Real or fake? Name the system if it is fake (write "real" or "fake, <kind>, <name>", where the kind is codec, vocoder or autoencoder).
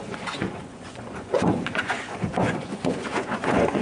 fake, vocoder, Vocos